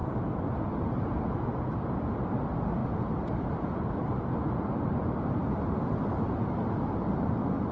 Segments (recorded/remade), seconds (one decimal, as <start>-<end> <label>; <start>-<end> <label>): 0.0-7.7 recorded